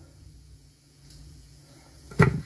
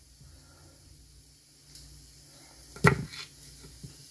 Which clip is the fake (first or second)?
first